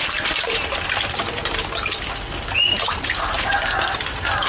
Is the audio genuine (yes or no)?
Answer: no